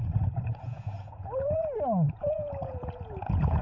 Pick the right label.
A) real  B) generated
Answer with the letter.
B